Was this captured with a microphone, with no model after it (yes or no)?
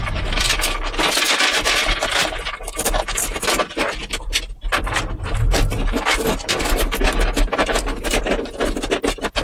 yes